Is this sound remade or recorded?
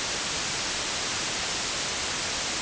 recorded